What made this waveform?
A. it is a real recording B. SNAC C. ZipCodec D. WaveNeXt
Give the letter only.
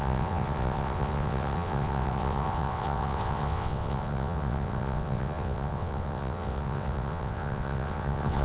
D